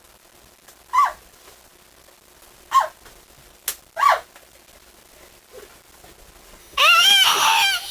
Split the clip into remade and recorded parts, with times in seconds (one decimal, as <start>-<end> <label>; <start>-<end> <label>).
0.0-6.6 recorded; 6.6-7.9 remade